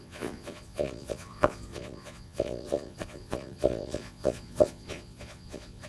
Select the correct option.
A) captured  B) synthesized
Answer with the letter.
B